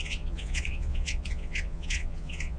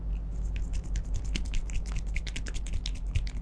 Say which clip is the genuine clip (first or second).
second